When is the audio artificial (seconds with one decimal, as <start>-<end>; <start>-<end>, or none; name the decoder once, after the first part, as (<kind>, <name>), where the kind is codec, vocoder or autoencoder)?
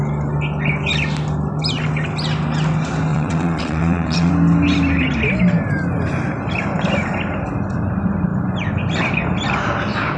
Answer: 3.1-4.3 (vocoder, WaveNeXt)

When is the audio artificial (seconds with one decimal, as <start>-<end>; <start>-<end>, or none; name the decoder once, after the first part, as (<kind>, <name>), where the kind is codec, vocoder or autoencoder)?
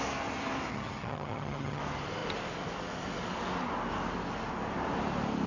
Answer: 0.7-1.8 (vocoder, HiFi-GAN)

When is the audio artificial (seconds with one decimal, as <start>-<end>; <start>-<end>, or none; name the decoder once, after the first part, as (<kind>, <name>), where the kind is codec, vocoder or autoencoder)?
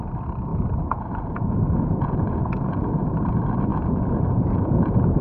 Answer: 0.5-2.9 (vocoder, Vocos); 3.7-5.2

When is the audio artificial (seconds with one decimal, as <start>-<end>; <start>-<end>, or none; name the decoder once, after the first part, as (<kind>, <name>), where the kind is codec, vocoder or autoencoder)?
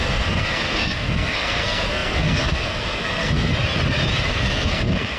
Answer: 0.0-3.5 (codec, SNAC); 4.3-5.2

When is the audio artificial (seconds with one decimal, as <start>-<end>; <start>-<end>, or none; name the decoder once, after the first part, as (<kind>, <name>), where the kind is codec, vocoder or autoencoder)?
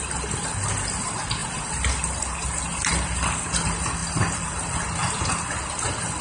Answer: none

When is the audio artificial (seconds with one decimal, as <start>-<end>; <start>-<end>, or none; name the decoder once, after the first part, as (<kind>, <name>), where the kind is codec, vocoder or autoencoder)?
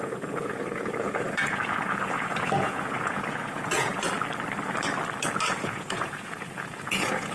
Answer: 0.0-3.9 (vocoder, Vocos); 5.5-7.3